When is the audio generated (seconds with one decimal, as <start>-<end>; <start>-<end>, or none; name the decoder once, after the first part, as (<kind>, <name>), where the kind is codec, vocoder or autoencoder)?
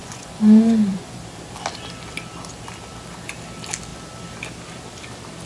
0.0-1.2 (vocoder, Vocos)